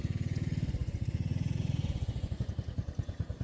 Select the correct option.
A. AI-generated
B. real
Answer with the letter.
A